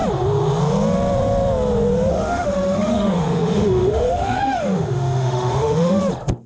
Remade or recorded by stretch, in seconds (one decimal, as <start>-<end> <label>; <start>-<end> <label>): 0.0-2.1 recorded; 2.1-6.0 remade; 6.0-6.5 recorded